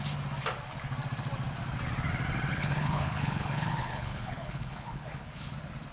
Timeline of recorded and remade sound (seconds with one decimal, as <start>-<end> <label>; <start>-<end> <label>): 0.0-2.5 recorded; 2.5-5.5 remade; 5.5-5.9 recorded